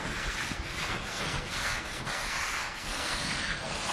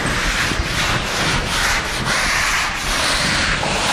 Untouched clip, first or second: second